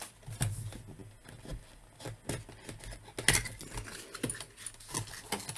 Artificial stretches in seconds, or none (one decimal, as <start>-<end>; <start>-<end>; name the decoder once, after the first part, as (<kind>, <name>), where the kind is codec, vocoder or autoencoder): none